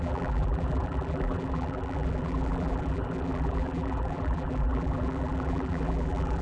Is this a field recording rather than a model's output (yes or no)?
no